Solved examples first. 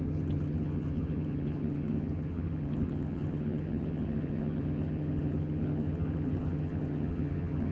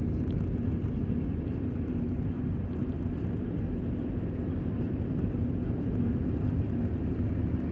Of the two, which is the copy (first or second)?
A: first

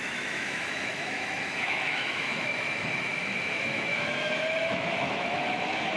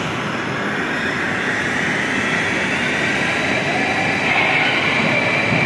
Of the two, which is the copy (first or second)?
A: first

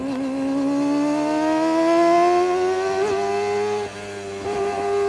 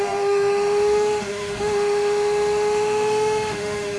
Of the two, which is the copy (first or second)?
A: second